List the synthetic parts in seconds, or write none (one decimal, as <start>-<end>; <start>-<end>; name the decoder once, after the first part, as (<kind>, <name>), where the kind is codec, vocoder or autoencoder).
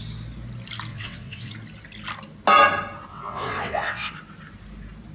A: 0.9-1.5 (vocoder, WaveNeXt); 3.1-4.1